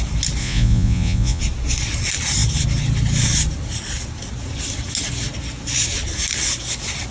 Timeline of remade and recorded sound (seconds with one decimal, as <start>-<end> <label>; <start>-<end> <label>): 0.0-0.4 recorded; 0.4-1.4 remade; 1.4-7.1 recorded